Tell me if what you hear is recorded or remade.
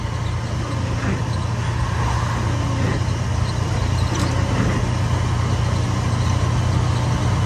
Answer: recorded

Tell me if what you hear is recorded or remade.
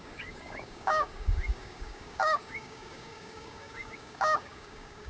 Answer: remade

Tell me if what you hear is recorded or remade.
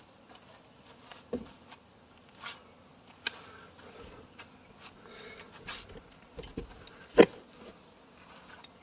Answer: recorded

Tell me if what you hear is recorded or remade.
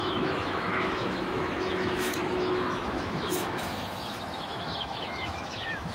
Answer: remade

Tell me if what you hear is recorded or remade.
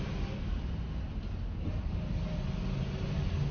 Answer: recorded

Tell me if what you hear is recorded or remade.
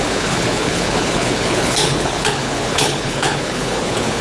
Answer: remade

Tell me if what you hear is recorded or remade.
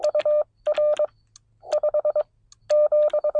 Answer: recorded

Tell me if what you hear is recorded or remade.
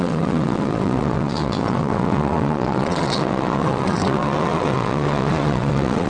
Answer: remade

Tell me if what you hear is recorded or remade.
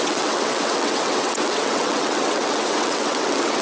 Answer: remade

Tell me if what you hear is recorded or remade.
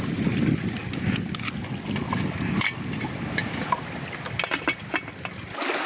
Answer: recorded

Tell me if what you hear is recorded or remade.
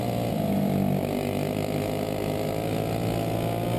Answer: recorded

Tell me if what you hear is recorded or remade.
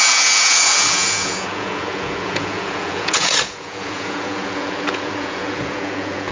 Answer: remade